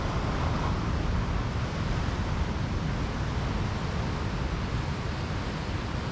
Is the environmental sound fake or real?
real